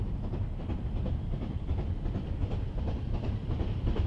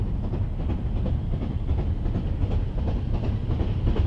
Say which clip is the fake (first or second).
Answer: first